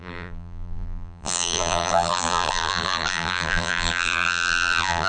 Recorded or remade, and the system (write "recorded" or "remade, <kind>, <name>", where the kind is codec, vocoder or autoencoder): remade, vocoder, BigVGAN v2